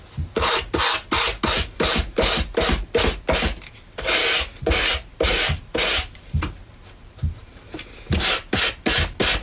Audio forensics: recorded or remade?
recorded